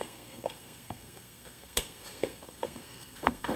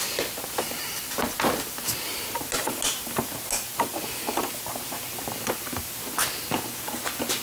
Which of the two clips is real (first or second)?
second